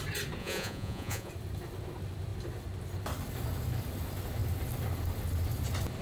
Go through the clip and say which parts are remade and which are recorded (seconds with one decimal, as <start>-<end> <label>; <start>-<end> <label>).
0.0-0.4 recorded; 0.4-1.3 remade; 1.3-6.0 recorded